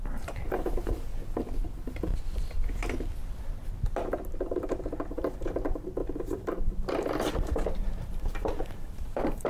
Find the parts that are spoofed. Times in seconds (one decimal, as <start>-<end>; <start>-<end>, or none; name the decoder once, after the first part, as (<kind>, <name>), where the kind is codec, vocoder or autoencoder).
0.0-1.1 (vocoder, BigVGAN v2); 5.1-9.5